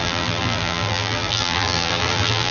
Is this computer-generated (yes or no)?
yes